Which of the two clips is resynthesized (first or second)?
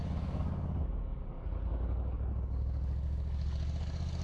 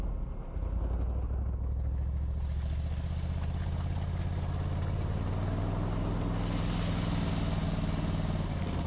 first